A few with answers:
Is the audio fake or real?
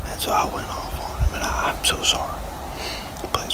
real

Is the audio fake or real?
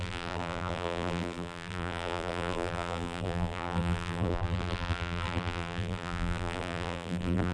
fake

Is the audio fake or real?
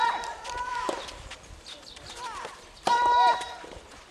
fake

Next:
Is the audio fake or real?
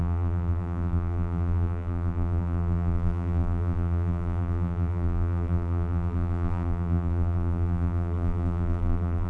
fake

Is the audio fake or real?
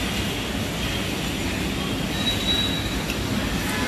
real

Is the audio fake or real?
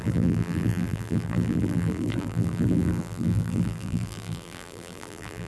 fake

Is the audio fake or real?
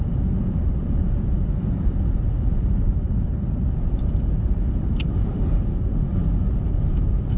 fake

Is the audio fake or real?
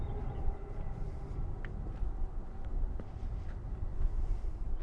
fake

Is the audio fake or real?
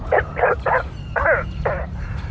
fake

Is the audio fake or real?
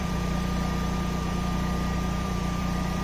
fake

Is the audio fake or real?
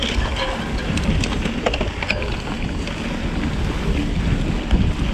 real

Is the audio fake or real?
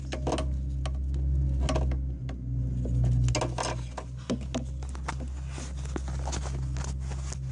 real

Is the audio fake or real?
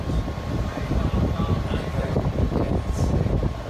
real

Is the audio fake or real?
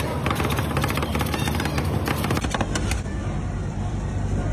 fake